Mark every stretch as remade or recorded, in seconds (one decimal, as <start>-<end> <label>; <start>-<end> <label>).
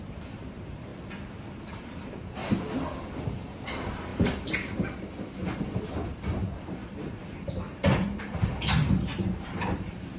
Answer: 0.0-0.9 remade; 0.9-1.7 recorded; 1.7-2.4 remade; 2.4-3.2 recorded; 3.2-10.2 remade